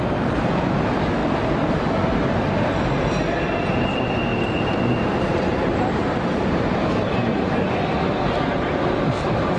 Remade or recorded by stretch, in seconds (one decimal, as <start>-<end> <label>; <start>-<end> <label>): 0.0-4.3 recorded; 4.3-7.6 remade; 7.6-9.6 recorded